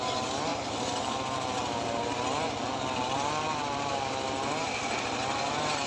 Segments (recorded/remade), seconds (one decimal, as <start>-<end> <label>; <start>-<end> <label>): 0.0-0.5 recorded; 0.5-1.2 remade; 1.2-5.9 recorded